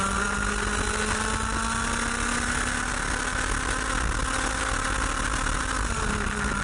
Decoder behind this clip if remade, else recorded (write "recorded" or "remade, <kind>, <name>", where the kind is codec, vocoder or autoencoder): recorded